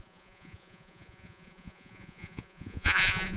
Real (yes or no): no